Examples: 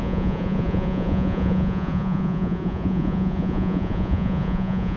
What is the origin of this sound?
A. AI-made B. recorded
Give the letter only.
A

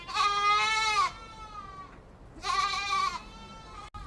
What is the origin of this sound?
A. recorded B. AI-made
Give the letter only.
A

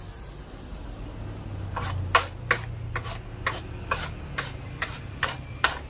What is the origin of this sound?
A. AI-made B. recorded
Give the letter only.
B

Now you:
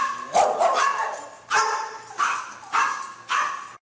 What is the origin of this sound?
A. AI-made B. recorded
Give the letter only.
B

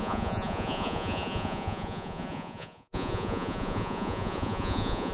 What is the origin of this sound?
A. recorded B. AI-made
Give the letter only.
B